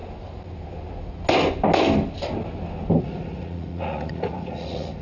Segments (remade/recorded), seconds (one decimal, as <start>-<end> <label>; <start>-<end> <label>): 0.0-3.0 recorded; 3.0-5.0 remade